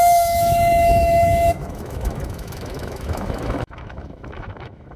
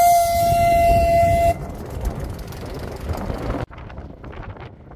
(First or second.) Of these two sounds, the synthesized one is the first